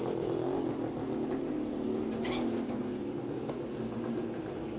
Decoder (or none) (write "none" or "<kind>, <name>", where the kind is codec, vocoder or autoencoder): none